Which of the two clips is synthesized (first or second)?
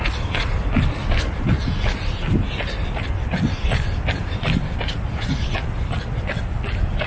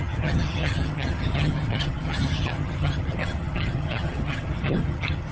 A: second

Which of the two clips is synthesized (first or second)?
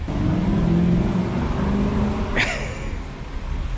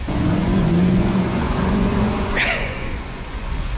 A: second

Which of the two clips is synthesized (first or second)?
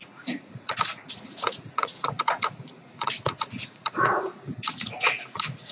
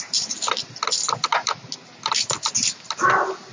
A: first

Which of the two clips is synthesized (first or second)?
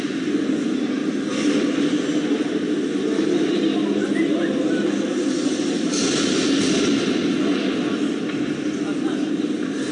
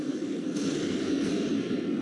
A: second